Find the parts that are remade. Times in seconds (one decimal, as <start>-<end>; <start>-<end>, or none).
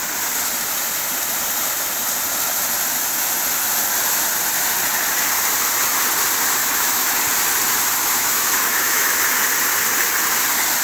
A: 6.6-7.2; 8.0-9.2